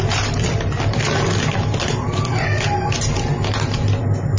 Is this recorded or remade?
recorded